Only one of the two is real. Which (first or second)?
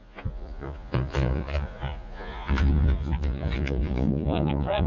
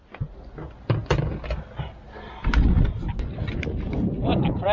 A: second